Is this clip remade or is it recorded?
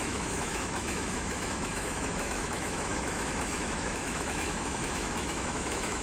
remade